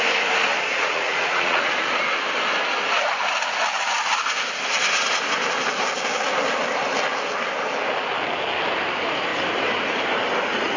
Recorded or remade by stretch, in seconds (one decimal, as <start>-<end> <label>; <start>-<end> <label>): 0.0-0.5 recorded; 0.5-1.9 remade; 1.9-10.8 recorded